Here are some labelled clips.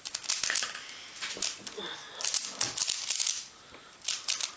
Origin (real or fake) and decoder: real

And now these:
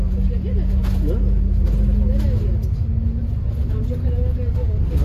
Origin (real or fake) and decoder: real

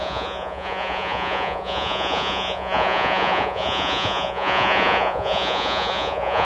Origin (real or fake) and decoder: fake, vocoder, Vocos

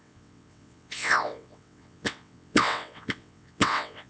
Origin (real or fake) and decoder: fake, vocoder, WaveNeXt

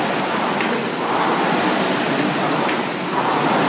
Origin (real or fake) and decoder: real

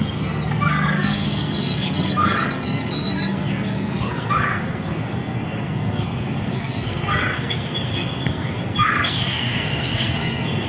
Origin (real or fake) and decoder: fake, codec, SNAC